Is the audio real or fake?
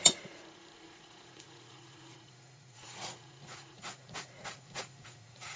fake